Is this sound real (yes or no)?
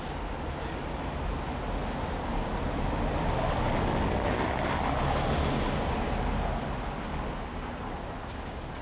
yes